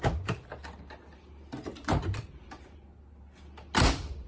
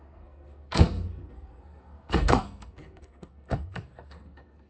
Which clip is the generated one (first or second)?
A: second